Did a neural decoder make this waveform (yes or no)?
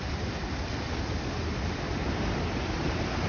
no